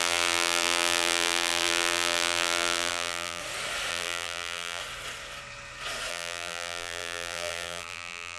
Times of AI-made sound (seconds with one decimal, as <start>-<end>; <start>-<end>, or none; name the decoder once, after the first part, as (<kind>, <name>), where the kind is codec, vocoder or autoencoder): 0.0-3.4 (vocoder, BigVGAN v2); 3.9-4.8; 6.1-8.4